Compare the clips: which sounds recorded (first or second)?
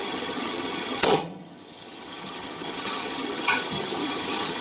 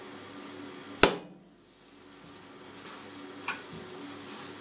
second